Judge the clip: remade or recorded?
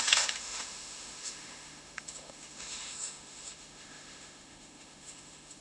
remade